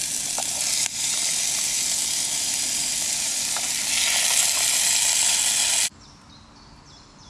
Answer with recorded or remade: recorded